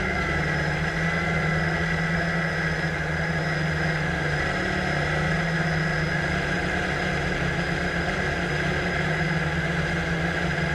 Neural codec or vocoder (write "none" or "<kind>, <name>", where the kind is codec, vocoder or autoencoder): none